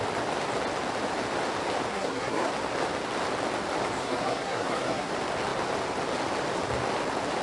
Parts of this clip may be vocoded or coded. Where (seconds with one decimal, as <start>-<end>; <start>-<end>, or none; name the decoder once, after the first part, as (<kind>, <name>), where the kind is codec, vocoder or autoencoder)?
1.9-2.5 (codec, SNAC); 4.0-5.1

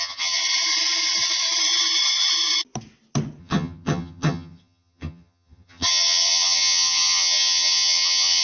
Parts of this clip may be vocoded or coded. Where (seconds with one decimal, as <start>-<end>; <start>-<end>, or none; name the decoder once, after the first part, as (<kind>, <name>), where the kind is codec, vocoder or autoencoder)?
0.0-0.4 (vocoder, HiFi-GAN); 3.4-8.4

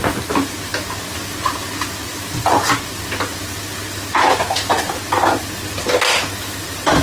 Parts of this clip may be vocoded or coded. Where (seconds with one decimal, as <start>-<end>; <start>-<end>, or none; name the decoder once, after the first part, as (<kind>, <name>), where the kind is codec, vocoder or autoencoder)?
none

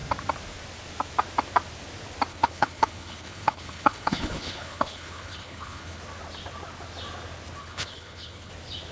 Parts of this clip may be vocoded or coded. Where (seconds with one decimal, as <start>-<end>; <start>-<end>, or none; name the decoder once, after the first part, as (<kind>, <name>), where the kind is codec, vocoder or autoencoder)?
2.3-6.0 (codec, HILCodec); 7.6-8.5